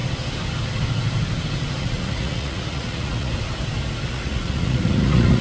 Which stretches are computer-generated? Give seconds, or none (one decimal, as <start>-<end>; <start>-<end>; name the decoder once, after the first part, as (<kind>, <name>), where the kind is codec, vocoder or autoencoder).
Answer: 1.8-3.3 (vocoder, Vocos); 4.1-5.4